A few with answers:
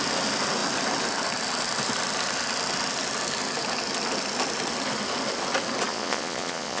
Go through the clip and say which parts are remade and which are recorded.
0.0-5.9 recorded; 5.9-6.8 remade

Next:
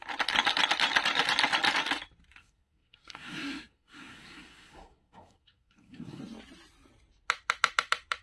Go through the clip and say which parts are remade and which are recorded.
0.0-2.4 recorded; 2.4-6.2 remade; 6.2-8.2 recorded

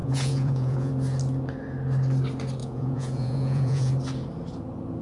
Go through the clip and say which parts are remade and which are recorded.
0.0-0.9 remade; 0.9-2.6 recorded; 2.6-3.9 remade; 3.9-5.0 recorded

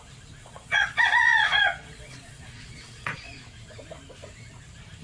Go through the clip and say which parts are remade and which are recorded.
0.0-0.4 recorded; 0.4-3.4 remade; 3.4-5.0 recorded

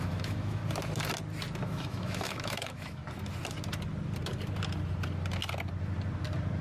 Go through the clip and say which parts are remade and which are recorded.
0.0-0.6 remade; 0.6-1.6 recorded; 1.6-3.0 remade; 3.0-6.6 recorded

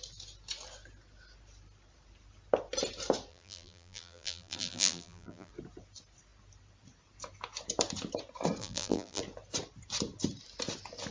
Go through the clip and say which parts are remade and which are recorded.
0.0-3.3 recorded; 3.3-5.5 remade; 5.5-8.6 recorded; 8.6-9.2 remade; 9.2-11.1 recorded